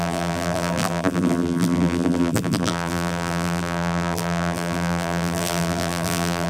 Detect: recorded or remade remade